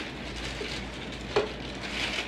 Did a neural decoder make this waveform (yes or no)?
no